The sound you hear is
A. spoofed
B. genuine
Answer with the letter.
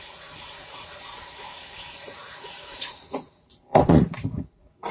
A